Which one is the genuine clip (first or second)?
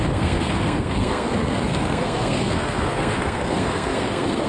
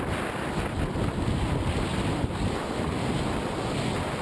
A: second